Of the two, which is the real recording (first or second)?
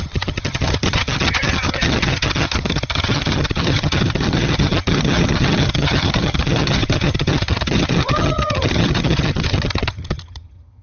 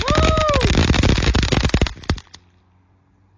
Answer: second